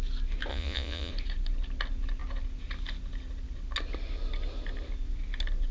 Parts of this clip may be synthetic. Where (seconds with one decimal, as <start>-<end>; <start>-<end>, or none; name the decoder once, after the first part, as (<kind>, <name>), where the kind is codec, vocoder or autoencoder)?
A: 0.5-1.1 (vocoder, Vocos)